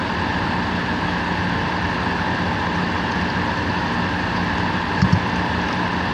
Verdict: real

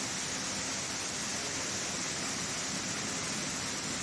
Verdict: real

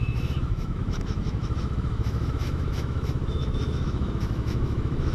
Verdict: fake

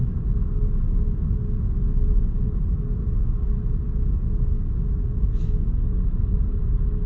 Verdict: real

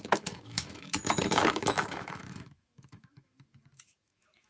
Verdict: fake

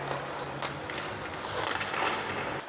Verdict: real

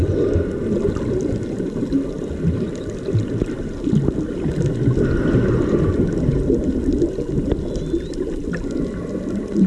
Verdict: real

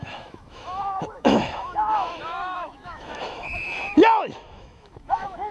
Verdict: fake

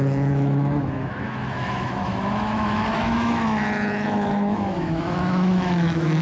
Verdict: fake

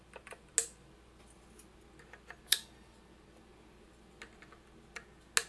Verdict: real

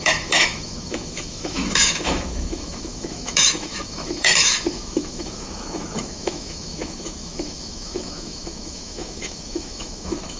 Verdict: fake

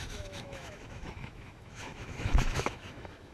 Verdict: fake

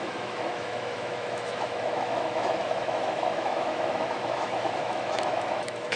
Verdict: fake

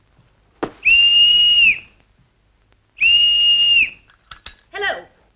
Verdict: real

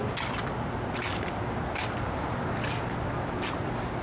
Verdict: real